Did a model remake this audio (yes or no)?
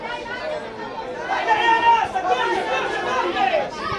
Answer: no